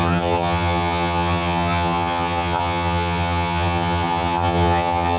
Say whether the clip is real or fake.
fake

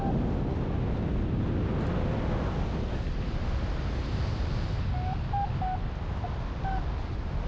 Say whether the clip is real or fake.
real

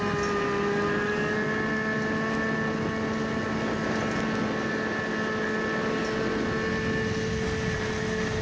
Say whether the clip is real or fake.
real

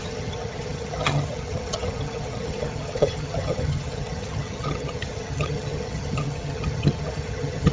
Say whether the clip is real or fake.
fake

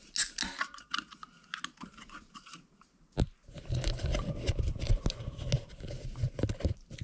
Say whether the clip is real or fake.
real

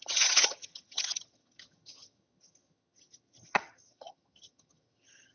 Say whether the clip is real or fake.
fake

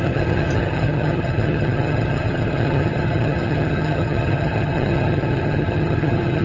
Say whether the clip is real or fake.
fake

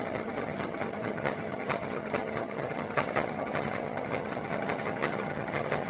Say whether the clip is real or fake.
fake